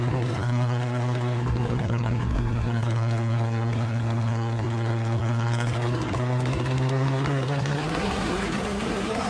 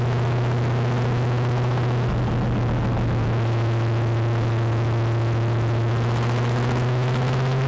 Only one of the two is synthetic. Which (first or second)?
first